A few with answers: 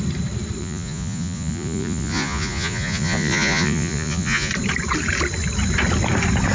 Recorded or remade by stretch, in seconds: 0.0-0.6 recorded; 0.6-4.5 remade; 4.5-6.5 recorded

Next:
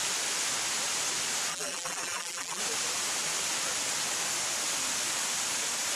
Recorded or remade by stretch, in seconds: 0.0-1.5 recorded; 1.5-2.6 remade; 2.6-6.0 recorded

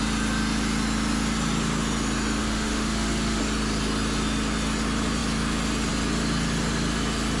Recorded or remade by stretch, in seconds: 0.0-2.4 recorded; 2.4-3.4 remade; 3.4-7.4 recorded

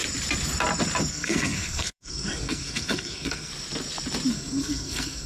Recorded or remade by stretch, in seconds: 0.0-1.1 recorded; 1.1-3.5 remade; 3.5-4.3 recorded; 4.3-5.3 remade

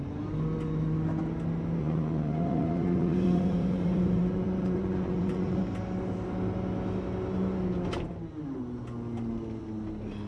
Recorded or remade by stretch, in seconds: 0.0-1.8 recorded; 1.8-5.6 remade; 5.6-10.3 recorded